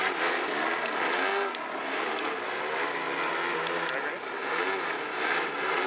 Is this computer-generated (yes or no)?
no